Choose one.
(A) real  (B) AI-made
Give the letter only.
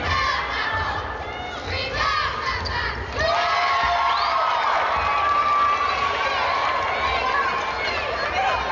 A